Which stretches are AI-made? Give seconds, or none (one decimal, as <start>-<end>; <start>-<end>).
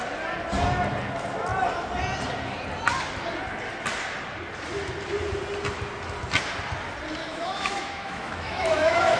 7.3-9.2